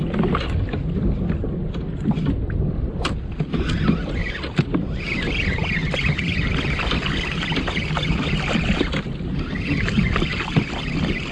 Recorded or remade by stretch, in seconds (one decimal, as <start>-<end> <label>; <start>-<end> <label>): 0.0-4.2 recorded; 4.2-8.3 remade; 8.3-10.3 recorded; 10.3-11.3 remade